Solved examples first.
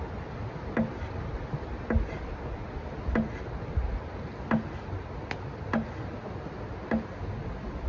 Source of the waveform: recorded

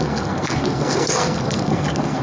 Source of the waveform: remade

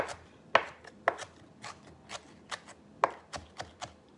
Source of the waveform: recorded